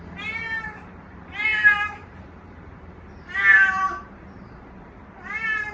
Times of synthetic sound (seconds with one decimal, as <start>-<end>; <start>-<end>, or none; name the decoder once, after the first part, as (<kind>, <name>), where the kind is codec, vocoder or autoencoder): 0.0-5.7 (vocoder, BigVGAN v2)